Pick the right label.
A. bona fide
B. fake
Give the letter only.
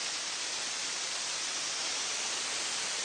A